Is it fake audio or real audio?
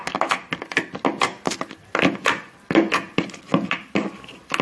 real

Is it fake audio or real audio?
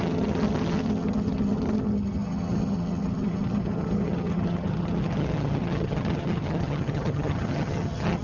fake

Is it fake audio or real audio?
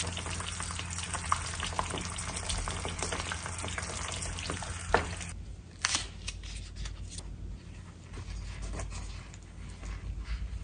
real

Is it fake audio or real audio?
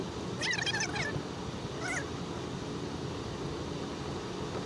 real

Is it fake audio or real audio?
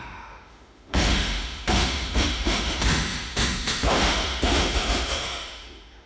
fake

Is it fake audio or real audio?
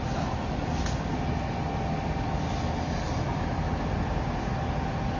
real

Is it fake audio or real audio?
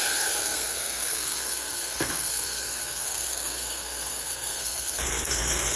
fake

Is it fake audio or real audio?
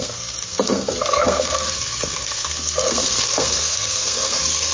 fake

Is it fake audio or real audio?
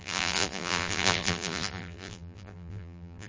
fake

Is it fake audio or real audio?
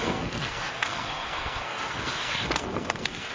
fake